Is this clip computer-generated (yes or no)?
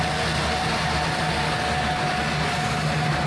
no